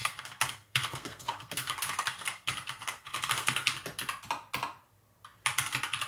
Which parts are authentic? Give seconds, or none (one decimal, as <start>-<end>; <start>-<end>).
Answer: 3.7-6.1